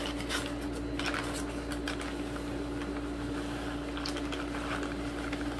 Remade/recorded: recorded